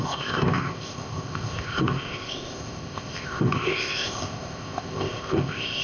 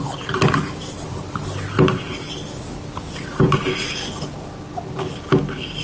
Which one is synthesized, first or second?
first